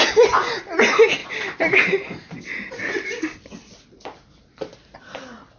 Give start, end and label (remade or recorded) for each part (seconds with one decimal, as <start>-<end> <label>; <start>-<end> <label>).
0.0-5.6 recorded

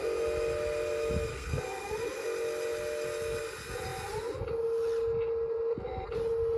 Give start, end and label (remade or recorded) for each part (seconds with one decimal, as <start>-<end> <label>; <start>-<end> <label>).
0.0-1.3 recorded; 1.3-1.9 remade; 1.9-6.6 recorded

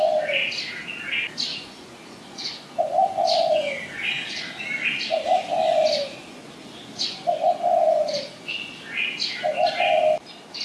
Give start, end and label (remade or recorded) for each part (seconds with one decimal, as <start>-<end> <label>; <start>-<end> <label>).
0.0-1.5 recorded; 1.5-4.5 remade; 4.5-5.4 recorded; 5.4-8.7 remade; 8.7-10.6 recorded

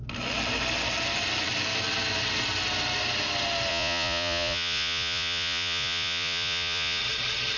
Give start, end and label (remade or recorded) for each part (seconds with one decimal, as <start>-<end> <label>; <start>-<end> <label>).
0.0-3.7 recorded; 3.7-7.0 remade; 7.0-7.6 recorded

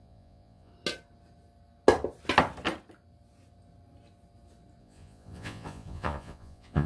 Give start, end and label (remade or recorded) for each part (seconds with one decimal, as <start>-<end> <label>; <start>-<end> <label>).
0.0-0.7 remade; 0.7-4.8 recorded; 4.8-6.9 remade

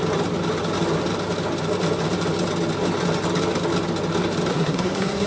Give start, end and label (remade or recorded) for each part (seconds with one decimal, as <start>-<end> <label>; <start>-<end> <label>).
0.0-4.5 recorded; 4.5-5.3 remade